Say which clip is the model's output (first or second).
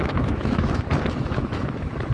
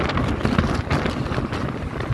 first